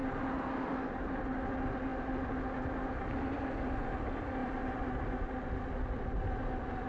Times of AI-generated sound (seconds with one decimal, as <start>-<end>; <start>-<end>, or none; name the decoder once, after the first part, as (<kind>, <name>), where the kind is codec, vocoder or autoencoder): 4.4-5.2 (vocoder, BigVGAN v2)